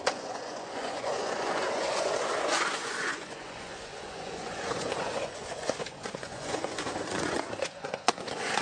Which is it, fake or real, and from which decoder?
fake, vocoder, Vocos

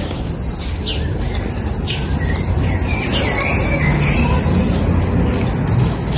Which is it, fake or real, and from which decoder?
real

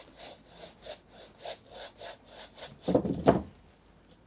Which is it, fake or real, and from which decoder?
real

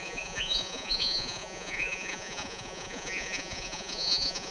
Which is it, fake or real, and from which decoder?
fake, vocoder, Vocos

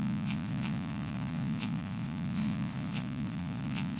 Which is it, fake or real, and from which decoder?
fake, vocoder, Vocos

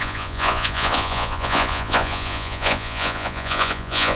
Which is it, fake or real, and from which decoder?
fake, vocoder, Vocos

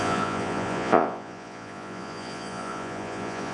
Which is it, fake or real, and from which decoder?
fake, vocoder, Vocos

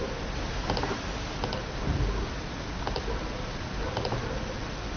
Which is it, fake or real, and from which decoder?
real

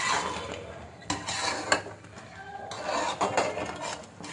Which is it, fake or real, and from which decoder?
real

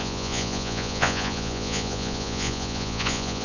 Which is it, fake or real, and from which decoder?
fake, vocoder, Vocos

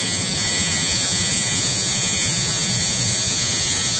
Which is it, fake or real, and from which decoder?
fake, vocoder, Vocos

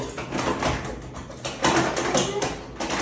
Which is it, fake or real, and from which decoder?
real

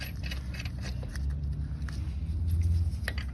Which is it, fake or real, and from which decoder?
real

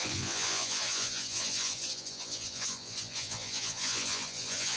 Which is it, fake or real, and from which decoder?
fake, vocoder, Vocos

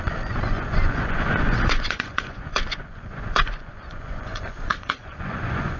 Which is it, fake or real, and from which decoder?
fake, vocoder, Vocos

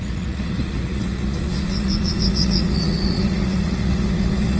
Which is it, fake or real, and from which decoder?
fake, vocoder, Vocos